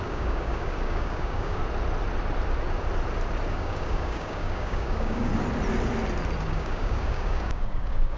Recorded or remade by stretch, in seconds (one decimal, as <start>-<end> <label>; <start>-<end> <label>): 0.0-1.6 remade; 1.6-3.5 recorded; 3.5-5.3 remade; 5.3-6.4 recorded; 6.4-8.2 remade